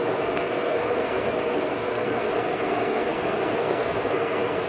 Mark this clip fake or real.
fake